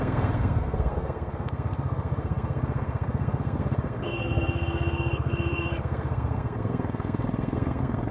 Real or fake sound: fake